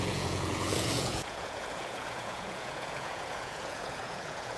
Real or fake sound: fake